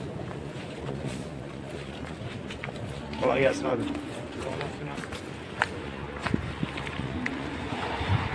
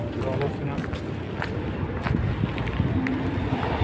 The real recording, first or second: second